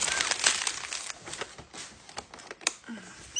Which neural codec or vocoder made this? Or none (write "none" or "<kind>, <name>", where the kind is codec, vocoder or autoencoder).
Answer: none